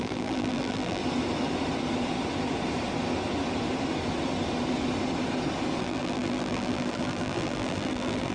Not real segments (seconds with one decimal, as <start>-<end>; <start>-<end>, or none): 0.0-1.0; 5.8-8.3